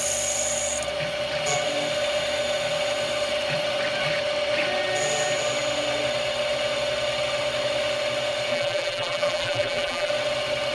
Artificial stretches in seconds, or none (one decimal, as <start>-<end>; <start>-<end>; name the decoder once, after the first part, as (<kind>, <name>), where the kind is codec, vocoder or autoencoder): 8.5-10.1 (vocoder, BigVGAN v2)